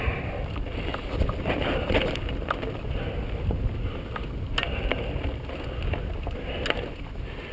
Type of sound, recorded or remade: recorded